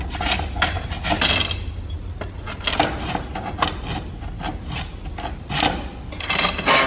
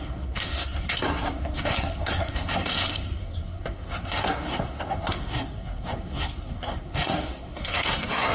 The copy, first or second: second